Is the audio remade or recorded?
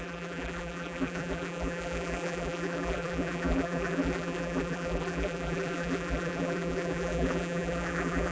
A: remade